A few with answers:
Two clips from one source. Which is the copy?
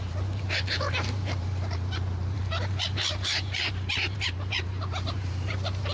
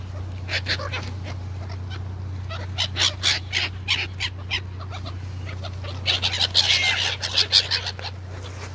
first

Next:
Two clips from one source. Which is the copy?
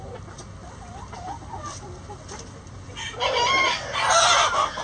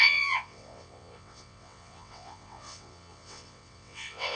second